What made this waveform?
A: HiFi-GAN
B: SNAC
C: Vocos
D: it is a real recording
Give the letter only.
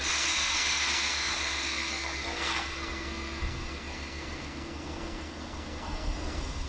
B